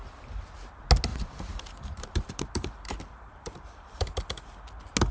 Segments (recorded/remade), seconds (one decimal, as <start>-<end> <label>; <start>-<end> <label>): 0.0-1.1 recorded; 1.1-4.2 remade; 4.2-5.1 recorded